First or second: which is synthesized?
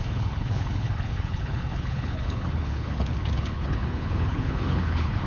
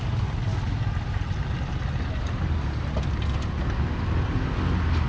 first